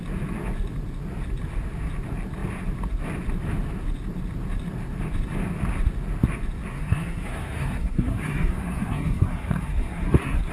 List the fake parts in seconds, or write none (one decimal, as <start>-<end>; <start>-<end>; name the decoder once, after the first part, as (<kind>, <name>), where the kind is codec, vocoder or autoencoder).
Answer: 6.7-10.5 (codec, SNAC)